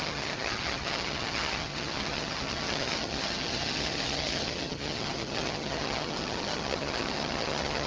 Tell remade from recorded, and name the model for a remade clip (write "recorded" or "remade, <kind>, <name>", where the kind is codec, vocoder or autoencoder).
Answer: remade, vocoder, HiFi-GAN